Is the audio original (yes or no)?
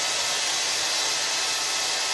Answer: yes